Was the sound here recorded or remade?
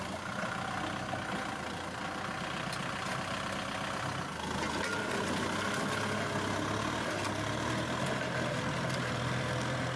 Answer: recorded